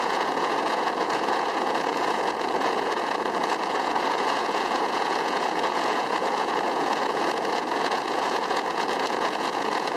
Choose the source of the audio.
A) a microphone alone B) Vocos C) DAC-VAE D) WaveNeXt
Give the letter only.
B